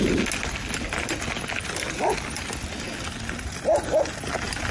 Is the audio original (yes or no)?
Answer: yes